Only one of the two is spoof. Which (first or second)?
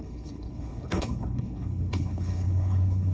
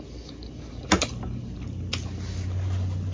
first